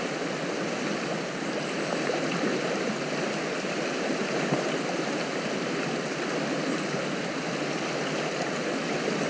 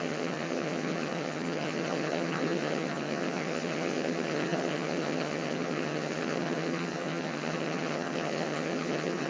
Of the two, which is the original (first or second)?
first